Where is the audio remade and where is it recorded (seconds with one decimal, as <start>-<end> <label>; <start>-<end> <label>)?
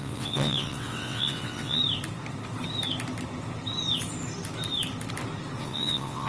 0.0-1.8 remade; 1.8-5.6 recorded; 5.6-6.3 remade